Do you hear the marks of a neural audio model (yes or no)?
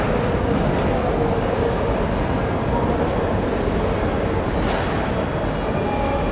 no